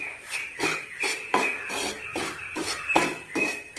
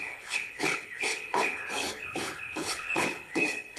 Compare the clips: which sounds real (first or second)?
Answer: first